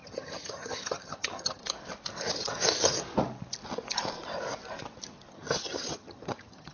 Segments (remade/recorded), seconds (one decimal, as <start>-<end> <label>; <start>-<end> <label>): 0.0-1.6 remade; 1.6-5.3 recorded; 5.3-6.7 remade